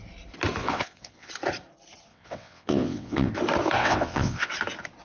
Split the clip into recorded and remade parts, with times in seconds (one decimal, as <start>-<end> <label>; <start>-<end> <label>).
0.0-0.6 recorded; 0.6-1.3 remade; 1.3-2.1 recorded; 2.1-3.3 remade; 3.3-3.8 recorded; 3.8-4.5 remade; 4.5-5.0 recorded